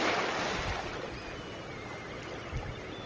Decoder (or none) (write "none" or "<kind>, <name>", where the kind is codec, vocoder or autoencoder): none